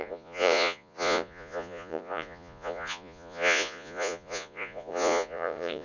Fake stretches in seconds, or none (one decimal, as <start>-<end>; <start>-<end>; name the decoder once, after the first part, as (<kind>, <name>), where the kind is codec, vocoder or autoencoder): 0.0-5.8 (vocoder, Vocos)

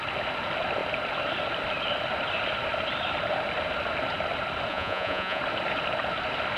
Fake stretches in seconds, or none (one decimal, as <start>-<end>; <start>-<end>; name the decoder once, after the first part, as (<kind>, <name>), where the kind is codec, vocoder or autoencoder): 4.7-5.4 (vocoder, Vocos)